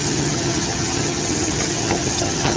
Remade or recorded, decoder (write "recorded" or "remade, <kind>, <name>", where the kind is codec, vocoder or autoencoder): remade, vocoder, HiFi-GAN